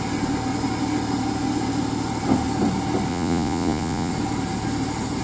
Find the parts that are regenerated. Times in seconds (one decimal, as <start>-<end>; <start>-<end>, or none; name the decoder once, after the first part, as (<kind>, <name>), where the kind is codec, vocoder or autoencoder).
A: 3.1-4.1 (vocoder, Vocos)